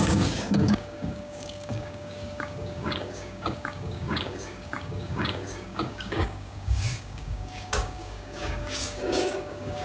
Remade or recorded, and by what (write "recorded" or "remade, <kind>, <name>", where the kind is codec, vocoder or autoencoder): remade, codec, DAC